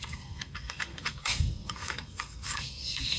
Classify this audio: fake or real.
fake